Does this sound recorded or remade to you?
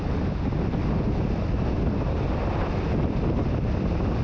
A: recorded